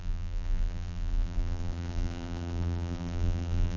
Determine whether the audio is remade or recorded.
remade